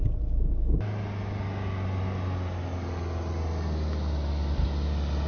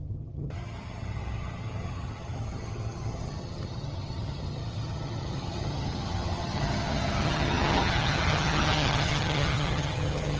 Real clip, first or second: first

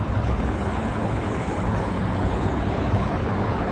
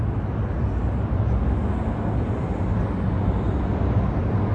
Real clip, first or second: second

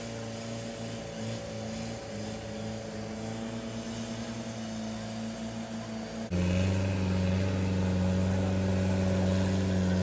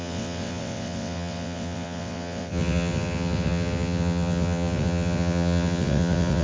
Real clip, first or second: first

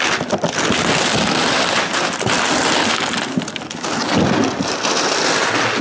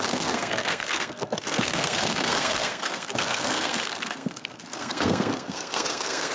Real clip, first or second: first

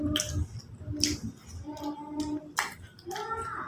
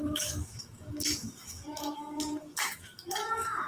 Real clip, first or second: first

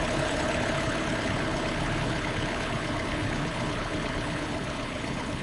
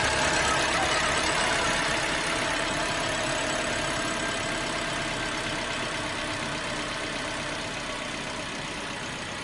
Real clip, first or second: second